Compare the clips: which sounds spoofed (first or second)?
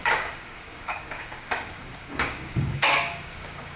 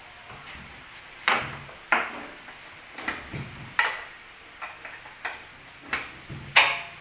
first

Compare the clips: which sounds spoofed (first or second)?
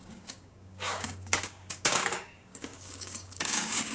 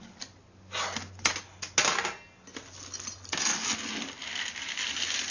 first